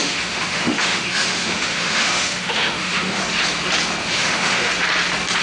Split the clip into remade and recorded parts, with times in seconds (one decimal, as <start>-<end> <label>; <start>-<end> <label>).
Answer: 0.0-3.2 remade; 3.2-4.0 recorded; 4.0-4.7 remade; 4.7-5.4 recorded